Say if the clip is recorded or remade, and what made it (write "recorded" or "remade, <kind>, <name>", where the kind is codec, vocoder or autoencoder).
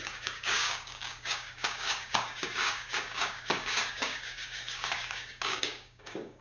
remade, codec, DAC